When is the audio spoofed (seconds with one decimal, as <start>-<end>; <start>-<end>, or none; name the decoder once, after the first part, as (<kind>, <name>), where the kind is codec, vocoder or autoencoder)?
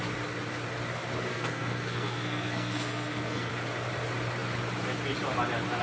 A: 1.3-3.5 (codec, SNAC)